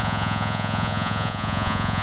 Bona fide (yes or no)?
no